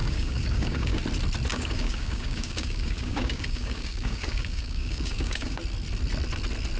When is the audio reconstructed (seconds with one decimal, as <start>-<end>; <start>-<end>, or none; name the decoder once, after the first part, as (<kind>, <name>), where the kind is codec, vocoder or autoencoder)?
0.0-1.0 (codec, DAC); 1.5-5.6